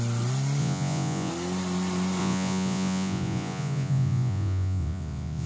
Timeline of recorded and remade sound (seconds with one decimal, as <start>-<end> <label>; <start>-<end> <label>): 0.0-0.6 recorded; 0.6-1.3 remade; 1.3-2.2 recorded; 2.2-5.5 remade